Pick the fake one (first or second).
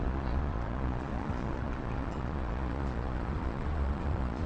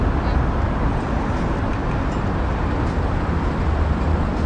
first